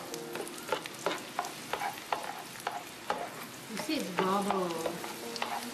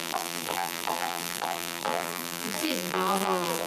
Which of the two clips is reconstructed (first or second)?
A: second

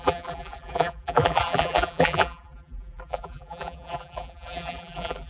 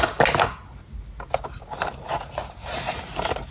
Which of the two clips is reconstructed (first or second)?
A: first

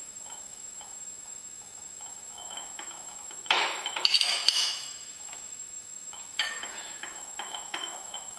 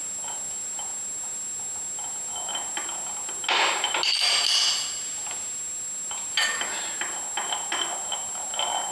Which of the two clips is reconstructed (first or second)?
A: first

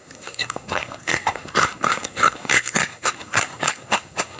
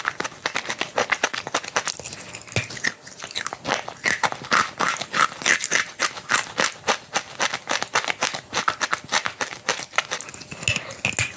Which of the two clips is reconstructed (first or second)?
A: first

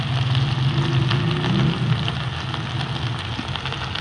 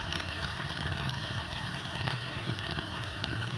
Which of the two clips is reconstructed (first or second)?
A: second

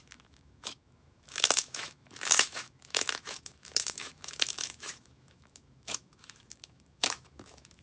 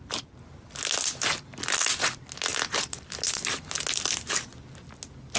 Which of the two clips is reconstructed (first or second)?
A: first